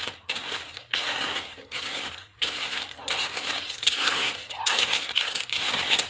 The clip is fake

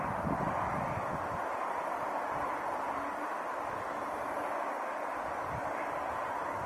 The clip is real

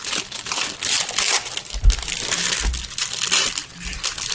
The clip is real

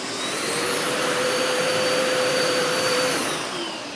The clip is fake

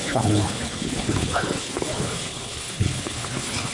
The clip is fake